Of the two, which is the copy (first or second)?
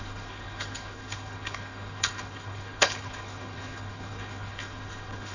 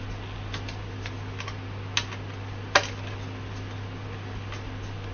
first